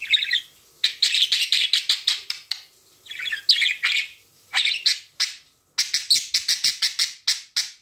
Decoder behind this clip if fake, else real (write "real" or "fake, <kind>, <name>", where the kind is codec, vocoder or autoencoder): real